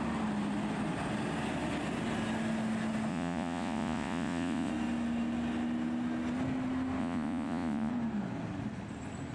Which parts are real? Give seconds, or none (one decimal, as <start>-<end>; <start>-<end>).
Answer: 0.0-3.1; 4.7-7.0; 7.9-9.3